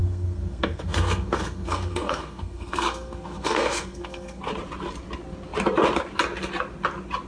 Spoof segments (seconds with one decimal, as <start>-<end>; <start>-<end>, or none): 0.0-4.4